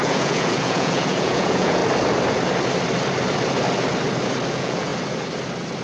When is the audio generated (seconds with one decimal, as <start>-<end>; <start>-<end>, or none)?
0.0-1.8; 4.5-4.9